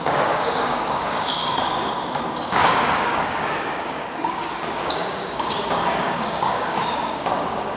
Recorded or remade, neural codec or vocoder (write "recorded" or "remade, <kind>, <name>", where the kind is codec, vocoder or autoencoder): remade, codec, DAC